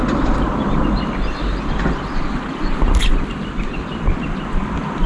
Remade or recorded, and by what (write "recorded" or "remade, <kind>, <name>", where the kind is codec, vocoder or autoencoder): recorded